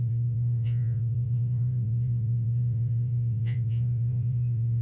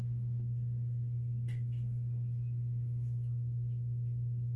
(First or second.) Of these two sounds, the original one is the second